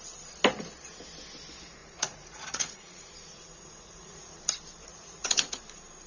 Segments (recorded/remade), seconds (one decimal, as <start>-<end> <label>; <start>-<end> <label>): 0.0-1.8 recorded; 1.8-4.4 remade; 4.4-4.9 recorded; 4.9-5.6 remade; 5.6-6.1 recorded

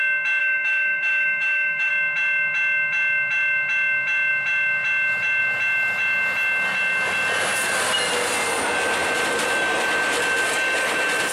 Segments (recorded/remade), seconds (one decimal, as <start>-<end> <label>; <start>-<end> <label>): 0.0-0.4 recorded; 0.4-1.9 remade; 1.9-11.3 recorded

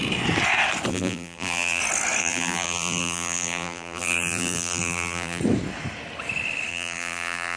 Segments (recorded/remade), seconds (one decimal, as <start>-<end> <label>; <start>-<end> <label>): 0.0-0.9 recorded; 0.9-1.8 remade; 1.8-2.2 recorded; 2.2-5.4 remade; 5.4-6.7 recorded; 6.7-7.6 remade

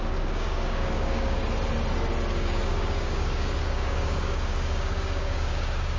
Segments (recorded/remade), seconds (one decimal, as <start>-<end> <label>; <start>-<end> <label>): 0.0-1.4 remade; 1.4-2.3 recorded; 2.3-6.0 remade

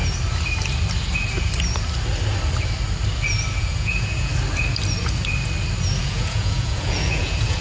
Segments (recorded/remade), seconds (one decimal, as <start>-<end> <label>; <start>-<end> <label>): 0.0-3.6 recorded; 3.6-4.3 remade; 4.3-6.0 recorded; 6.0-7.6 remade

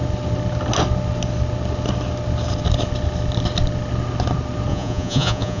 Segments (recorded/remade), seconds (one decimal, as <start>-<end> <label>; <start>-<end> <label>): 0.0-4.7 recorded; 4.7-5.6 remade